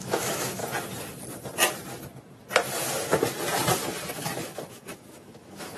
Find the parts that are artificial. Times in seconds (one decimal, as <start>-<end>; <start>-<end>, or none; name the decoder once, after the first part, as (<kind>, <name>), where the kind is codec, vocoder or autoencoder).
0.0-0.6 (autoencoder, DAC-VAE); 4.1-5.8